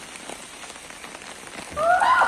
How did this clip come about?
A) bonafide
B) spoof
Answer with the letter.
A